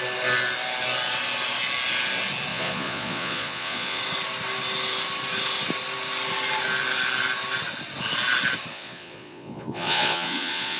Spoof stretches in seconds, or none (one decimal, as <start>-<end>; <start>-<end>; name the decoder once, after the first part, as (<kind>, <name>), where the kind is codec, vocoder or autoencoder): 2.5-4.0 (vocoder, Vocos); 8.7-10.8